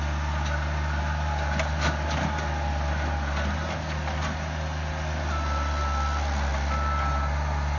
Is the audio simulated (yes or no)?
no